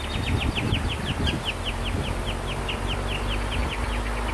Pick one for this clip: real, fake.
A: real